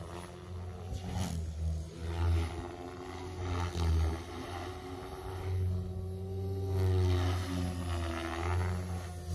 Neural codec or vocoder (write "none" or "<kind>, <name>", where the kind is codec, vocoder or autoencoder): none